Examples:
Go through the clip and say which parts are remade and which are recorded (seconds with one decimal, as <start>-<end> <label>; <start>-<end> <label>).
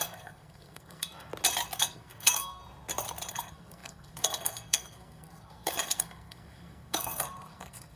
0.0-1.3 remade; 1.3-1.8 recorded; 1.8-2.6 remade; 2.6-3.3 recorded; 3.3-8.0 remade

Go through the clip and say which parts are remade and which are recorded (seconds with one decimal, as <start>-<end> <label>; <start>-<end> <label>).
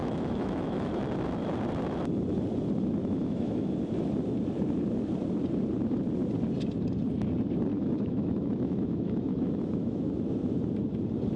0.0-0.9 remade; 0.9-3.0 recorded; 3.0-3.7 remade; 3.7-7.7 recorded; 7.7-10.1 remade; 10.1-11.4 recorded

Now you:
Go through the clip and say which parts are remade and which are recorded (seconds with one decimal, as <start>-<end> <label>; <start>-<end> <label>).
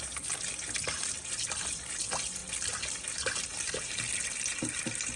0.0-5.2 recorded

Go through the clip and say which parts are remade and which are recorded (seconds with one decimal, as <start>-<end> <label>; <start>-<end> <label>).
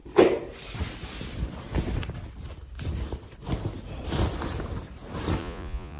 0.0-5.4 recorded; 5.4-6.0 remade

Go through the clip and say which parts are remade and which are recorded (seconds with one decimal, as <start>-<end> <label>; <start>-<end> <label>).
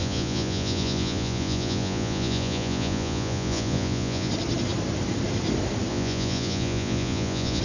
0.0-4.3 remade; 4.3-5.9 recorded; 5.9-7.6 remade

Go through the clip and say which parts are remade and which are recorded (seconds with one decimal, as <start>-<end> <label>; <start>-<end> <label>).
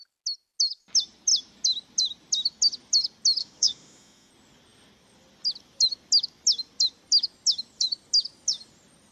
0.0-3.4 recorded; 3.4-4.3 remade; 4.3-9.1 recorded